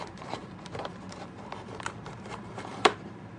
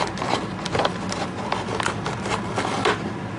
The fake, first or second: first